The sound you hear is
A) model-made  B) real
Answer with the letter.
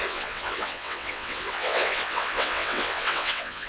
A